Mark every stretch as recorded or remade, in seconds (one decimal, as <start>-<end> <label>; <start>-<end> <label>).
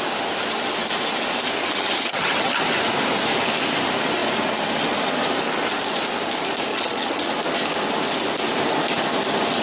0.0-1.6 recorded; 1.6-2.6 remade; 2.6-6.7 recorded; 6.7-7.3 remade; 7.3-9.6 recorded